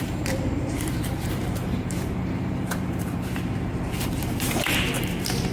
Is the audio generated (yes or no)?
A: yes